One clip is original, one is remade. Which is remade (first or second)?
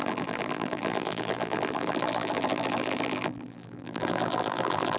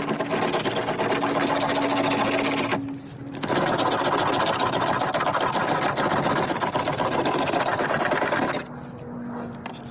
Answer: first